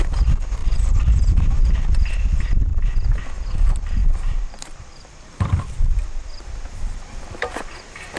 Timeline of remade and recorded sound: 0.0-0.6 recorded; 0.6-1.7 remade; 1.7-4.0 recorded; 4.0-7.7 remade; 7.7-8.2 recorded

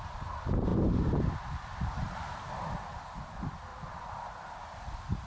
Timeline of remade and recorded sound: 0.0-0.7 recorded; 0.7-1.9 remade; 1.9-3.7 recorded; 3.7-5.3 remade

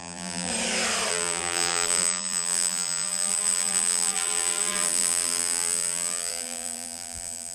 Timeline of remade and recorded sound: 0.0-0.5 remade; 0.5-1.1 recorded; 1.1-7.5 remade

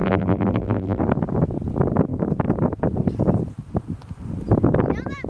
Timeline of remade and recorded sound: 0.0-1.0 remade; 1.0-5.3 recorded

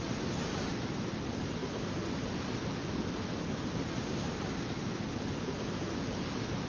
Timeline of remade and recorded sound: 0.0-6.7 recorded

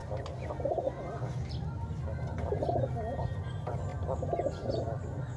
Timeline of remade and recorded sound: 0.0-5.4 recorded

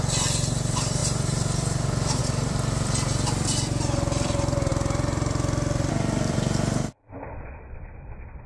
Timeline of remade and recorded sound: 0.0-1.0 remade; 1.0-2.2 recorded; 2.2-8.5 remade

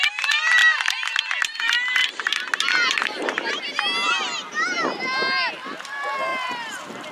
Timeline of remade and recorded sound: 0.0-6.3 recorded; 6.3-7.1 remade